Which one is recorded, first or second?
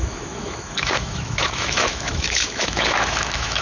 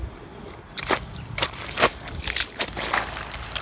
second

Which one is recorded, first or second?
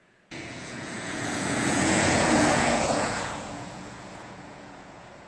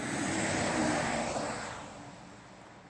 second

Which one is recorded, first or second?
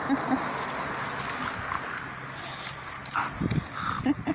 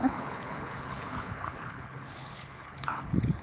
first